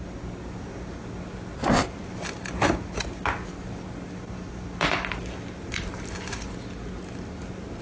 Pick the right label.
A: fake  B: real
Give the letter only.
B